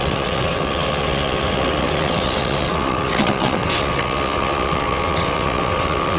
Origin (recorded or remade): remade